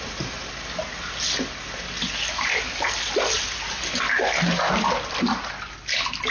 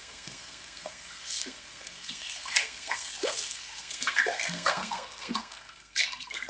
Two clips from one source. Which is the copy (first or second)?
second